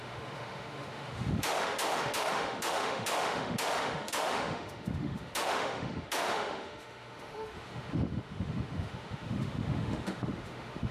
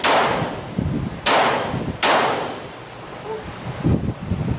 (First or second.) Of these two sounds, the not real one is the first